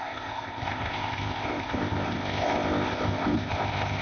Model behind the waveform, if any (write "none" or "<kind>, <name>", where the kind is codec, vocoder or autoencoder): codec, ZipCodec